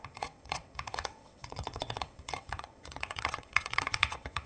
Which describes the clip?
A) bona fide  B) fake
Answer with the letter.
B